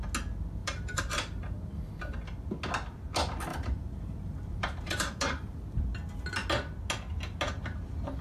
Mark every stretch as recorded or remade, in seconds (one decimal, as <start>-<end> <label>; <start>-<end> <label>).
0.0-0.6 recorded; 0.6-2.0 remade; 2.0-3.5 recorded; 3.5-5.8 remade; 5.8-8.2 recorded